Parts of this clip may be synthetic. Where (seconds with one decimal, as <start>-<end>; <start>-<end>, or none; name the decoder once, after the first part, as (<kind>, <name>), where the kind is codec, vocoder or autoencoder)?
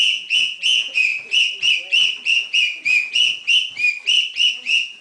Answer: 0.0-1.1 (vocoder, Vocos); 2.3-3.4; 4.5-5.0